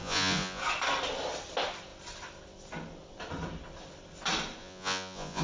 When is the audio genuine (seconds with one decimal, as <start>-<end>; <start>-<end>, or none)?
0.6-4.6